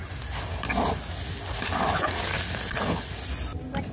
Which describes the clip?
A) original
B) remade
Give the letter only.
A